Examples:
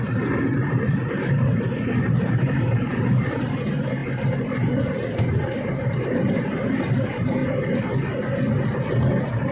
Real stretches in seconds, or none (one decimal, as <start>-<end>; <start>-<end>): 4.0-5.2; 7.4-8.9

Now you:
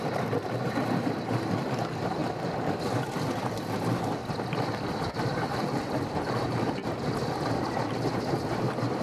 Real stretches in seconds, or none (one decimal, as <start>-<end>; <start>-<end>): 4.2-4.9; 6.8-8.6

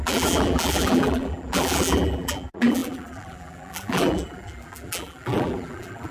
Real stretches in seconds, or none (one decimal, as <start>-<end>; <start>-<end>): none

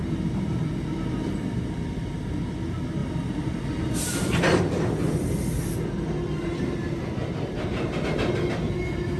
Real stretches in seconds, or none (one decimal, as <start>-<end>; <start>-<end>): 0.0-3.0; 4.6-9.2